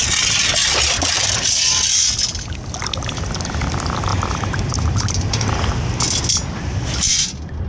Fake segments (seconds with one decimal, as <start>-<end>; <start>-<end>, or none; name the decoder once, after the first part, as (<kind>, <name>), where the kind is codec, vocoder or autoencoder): 0.6-2.4 (vocoder, BigVGAN v2); 4.1-5.3